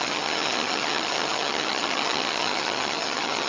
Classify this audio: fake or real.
fake